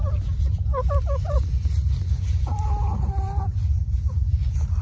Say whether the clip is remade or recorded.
recorded